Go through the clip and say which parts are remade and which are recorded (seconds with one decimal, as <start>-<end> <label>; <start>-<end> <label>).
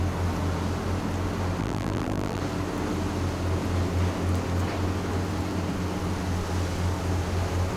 0.0-1.6 recorded; 1.6-2.4 remade; 2.4-7.8 recorded